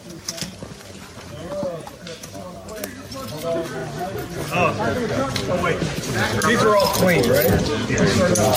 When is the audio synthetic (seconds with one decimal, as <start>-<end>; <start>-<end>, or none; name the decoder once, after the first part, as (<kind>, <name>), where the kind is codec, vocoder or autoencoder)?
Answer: none